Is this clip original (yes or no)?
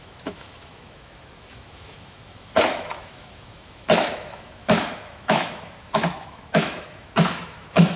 no